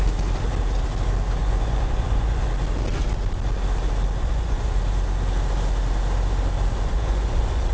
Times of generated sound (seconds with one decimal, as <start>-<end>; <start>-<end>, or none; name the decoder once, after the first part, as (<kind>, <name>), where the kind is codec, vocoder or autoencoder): 1.4-2.5 (vocoder, Vocos); 4.2-4.8; 6.7-7.7